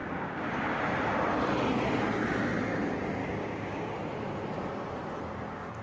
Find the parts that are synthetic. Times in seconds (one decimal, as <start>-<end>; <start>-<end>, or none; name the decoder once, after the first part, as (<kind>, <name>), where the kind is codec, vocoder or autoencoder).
0.0-0.8 (codec, DAC); 3.2-3.9